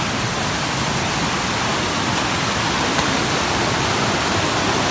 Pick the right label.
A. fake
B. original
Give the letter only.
B